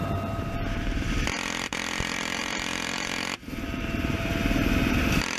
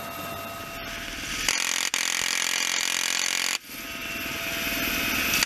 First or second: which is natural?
second